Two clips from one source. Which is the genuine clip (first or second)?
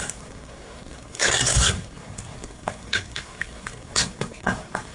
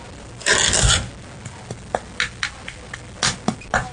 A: second